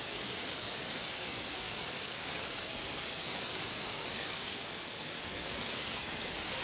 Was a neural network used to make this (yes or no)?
yes